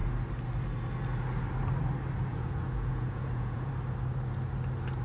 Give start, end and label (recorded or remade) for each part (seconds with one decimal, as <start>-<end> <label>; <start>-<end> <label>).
0.0-2.3 recorded; 2.3-3.7 remade; 3.7-5.0 recorded